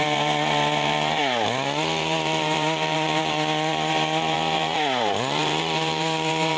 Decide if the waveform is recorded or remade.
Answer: remade